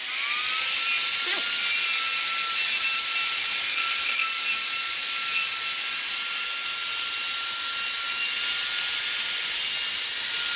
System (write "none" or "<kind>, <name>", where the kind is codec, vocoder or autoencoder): none